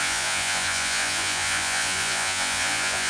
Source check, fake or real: fake